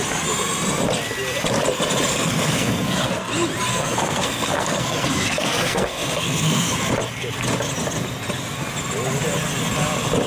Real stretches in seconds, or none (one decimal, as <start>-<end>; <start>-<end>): 0.0-2.1; 3.3-3.7; 6.8-10.3